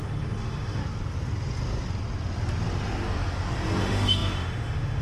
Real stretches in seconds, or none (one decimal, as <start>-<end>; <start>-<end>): 0.8-3.8